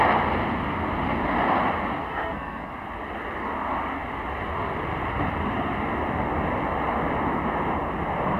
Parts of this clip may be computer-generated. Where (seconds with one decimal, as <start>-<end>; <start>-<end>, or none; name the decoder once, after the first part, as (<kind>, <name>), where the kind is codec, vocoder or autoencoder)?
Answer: 2.0-2.7 (codec, SNAC)